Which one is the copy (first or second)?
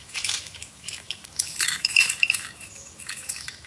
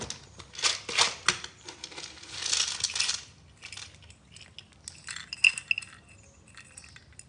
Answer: first